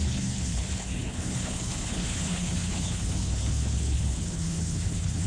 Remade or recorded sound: remade